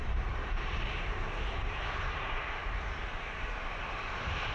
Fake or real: fake